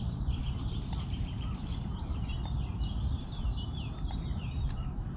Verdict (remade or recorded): remade